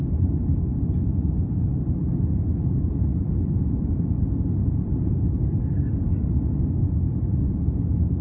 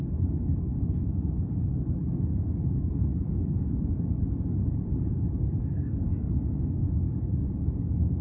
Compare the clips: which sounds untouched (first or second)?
first